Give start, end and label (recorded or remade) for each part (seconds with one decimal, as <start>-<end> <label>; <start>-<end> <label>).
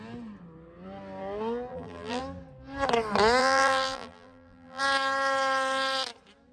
0.0-1.7 recorded; 1.7-2.2 remade; 2.2-3.4 recorded; 3.4-4.8 remade; 4.8-6.5 recorded